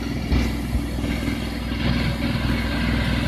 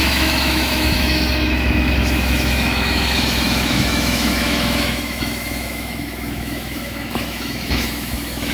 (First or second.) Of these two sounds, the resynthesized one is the second